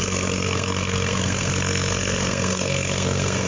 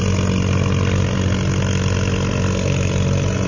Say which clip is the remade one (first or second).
first